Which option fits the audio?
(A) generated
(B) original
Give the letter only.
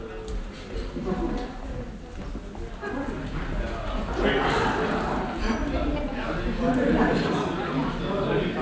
B